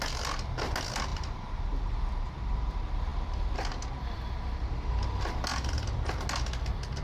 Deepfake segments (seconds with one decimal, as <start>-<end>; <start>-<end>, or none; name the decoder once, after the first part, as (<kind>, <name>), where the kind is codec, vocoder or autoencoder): 1.1-2.6 (vocoder, BigVGAN v2); 3.1-3.7; 5.5-6.1